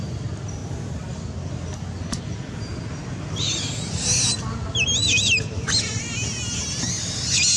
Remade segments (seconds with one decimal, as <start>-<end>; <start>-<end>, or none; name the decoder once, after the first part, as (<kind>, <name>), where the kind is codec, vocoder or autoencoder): none